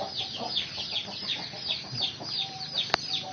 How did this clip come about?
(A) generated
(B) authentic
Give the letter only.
B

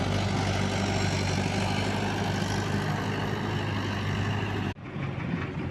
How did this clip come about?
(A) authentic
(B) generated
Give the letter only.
A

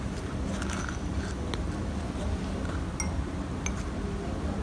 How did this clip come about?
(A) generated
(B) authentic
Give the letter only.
B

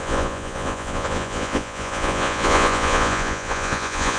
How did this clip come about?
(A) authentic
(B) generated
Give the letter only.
B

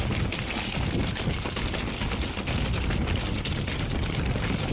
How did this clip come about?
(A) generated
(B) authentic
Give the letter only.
B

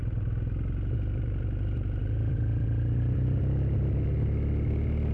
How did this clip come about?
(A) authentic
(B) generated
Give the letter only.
A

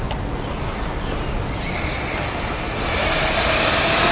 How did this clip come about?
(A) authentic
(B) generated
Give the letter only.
A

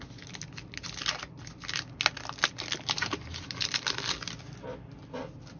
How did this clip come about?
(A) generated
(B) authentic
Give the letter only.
B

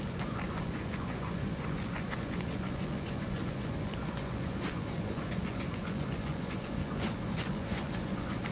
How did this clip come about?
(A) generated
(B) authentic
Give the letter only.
A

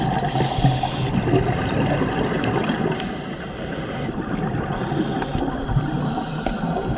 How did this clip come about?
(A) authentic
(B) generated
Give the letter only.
A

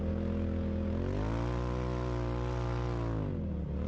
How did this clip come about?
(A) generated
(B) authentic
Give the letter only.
B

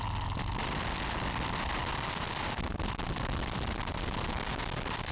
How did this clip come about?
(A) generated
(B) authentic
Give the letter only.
B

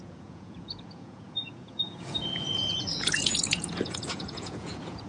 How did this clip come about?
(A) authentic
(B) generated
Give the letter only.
B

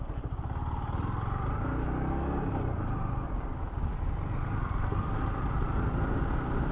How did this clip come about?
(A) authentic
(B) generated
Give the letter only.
A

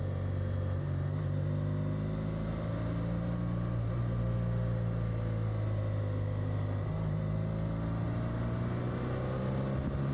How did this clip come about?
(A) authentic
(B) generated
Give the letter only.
A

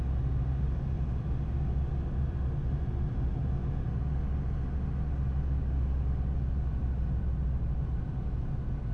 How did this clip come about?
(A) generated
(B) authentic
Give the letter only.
B